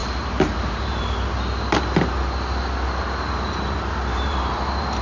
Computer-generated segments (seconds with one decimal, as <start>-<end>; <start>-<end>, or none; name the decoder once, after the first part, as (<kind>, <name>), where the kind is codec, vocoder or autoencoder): 0.0-1.0 (vocoder, BigVGAN v2); 4.1-5.0